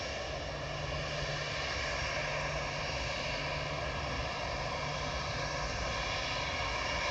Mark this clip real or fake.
real